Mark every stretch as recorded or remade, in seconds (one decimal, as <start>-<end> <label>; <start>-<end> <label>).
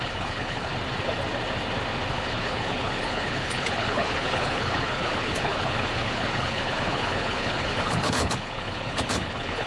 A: 0.0-0.7 remade; 0.7-2.1 recorded; 2.1-9.7 remade